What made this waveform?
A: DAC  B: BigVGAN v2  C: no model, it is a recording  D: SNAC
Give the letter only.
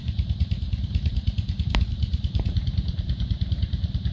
B